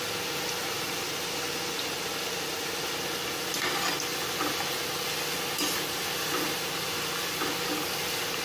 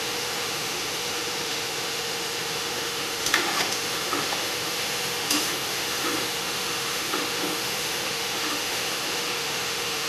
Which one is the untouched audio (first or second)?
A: first